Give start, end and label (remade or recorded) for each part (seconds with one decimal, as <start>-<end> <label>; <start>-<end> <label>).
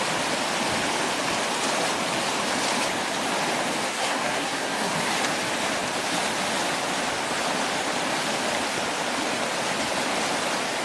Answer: 0.0-3.9 recorded; 3.9-4.9 remade; 4.9-10.8 recorded